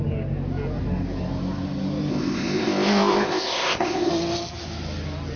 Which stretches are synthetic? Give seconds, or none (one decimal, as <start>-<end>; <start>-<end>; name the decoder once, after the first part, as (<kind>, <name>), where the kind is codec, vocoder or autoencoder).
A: 2.1-4.1 (codec, ZipCodec)